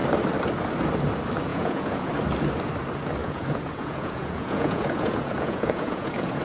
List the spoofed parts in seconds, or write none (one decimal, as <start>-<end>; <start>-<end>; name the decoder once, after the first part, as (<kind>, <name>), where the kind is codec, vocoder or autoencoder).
1.5-2.1 (vocoder, Vocos); 3.2-6.4